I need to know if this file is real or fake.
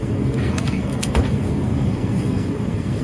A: fake